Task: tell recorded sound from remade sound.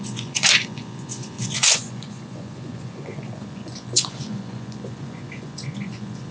remade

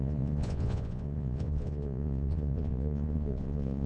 remade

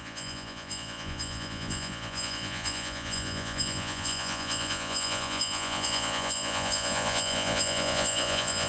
remade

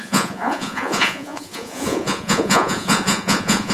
remade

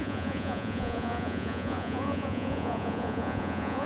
remade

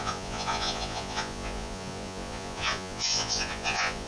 remade